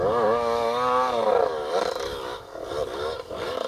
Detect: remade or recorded remade